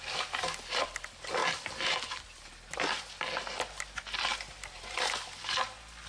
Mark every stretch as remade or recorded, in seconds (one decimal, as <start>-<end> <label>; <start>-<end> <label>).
0.0-6.1 recorded